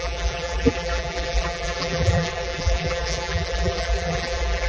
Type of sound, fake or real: fake